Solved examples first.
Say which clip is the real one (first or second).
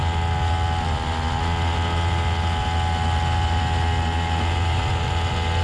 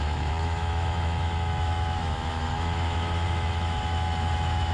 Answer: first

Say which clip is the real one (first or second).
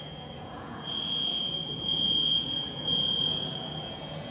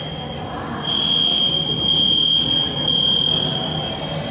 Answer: second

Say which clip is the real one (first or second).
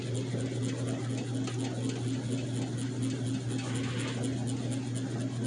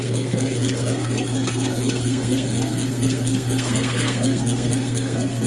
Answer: first